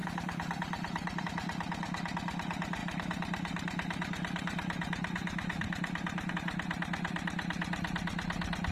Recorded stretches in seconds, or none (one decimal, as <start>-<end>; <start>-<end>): 1.2-2.8; 6.3-8.7